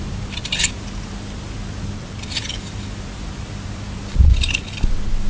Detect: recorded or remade recorded